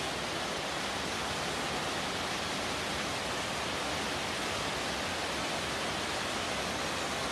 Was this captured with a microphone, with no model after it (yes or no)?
yes